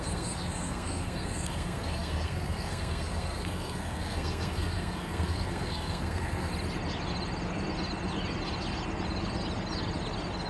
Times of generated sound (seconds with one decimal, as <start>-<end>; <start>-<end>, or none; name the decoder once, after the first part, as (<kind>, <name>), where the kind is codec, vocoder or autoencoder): 0.0-6.5 (codec, SNAC)